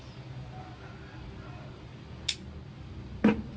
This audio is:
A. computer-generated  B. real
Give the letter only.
B